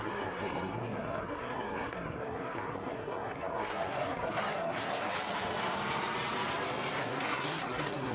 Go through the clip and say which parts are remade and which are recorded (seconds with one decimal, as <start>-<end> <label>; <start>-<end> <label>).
0.0-5.0 remade; 5.0-7.0 recorded; 7.0-8.1 remade